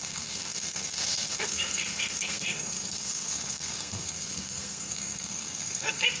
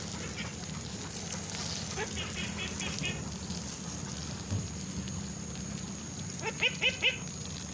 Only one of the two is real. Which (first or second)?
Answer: second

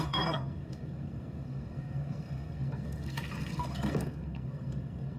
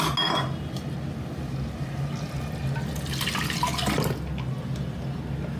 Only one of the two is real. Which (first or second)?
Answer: second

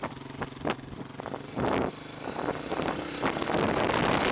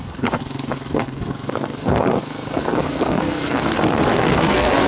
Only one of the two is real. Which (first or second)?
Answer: first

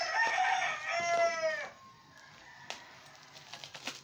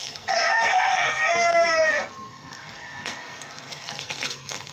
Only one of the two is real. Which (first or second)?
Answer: first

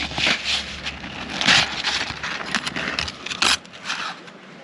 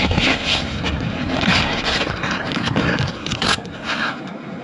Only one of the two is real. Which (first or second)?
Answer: first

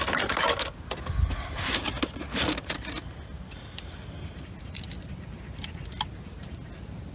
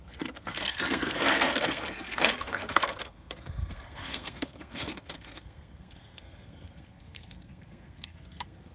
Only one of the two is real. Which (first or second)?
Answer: first